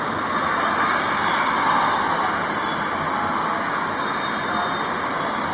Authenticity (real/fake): real